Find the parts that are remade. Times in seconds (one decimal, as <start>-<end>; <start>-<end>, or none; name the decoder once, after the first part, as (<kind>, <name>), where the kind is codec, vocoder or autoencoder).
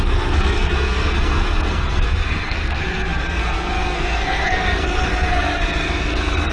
0.0-6.5 (codec, SNAC)